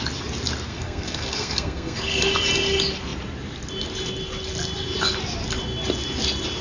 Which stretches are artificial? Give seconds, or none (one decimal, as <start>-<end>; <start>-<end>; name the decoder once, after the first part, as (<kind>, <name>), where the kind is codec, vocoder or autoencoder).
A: 0.7-2.3 (codec, SNAC)